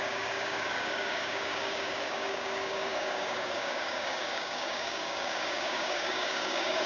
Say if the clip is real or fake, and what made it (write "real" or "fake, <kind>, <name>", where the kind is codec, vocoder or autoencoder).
fake, codec, DAC